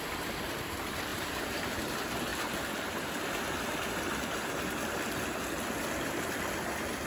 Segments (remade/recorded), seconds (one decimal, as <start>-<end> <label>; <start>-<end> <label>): 0.0-1.1 recorded; 1.1-1.8 remade; 1.8-7.1 recorded